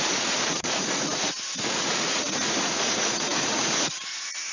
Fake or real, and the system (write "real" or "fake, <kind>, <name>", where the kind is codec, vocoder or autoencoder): fake, vocoder, Vocos